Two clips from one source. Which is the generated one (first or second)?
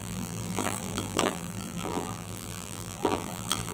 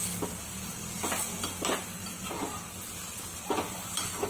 first